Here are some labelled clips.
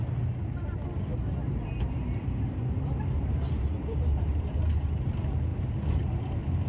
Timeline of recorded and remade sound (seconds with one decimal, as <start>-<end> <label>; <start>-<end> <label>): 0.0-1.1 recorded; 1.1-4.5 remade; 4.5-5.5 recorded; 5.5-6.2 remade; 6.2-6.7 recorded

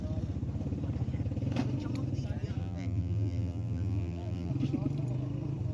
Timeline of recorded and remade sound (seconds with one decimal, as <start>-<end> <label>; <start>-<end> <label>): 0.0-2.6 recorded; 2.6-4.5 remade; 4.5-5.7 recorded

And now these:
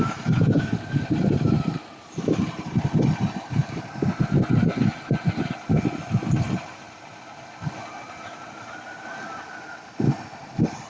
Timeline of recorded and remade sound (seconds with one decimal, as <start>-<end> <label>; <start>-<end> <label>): 0.0-10.9 recorded

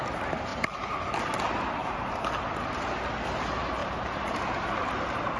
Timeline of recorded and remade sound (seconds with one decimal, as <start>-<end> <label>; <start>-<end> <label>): 0.0-0.5 recorded; 0.5-1.0 remade; 1.0-1.8 recorded; 1.8-2.7 remade; 2.7-3.8 recorded; 3.8-4.3 remade; 4.3-5.4 recorded

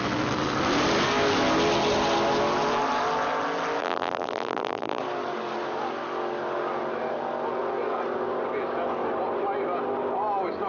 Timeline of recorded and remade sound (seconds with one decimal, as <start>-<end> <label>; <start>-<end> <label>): 0.0-3.8 recorded; 3.8-5.0 remade; 5.0-10.7 recorded